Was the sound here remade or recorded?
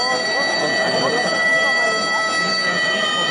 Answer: recorded